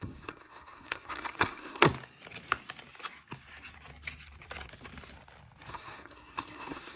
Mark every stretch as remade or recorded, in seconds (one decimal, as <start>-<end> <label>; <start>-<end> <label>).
0.0-1.9 remade; 1.9-5.7 recorded; 5.7-7.0 remade